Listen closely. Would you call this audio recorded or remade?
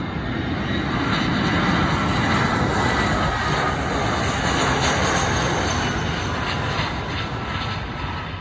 recorded